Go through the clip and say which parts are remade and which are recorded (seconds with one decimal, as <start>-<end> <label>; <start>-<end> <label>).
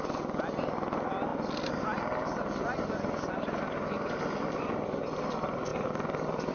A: 0.0-6.5 recorded